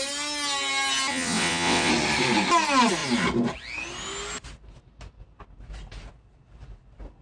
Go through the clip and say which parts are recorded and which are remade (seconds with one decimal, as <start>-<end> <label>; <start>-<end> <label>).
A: 0.0-1.1 recorded; 1.1-1.9 remade; 1.9-7.2 recorded